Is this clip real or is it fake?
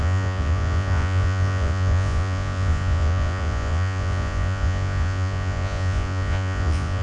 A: fake